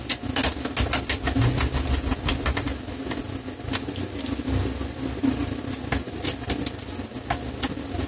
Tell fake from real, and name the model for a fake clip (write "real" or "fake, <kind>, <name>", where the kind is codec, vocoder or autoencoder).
real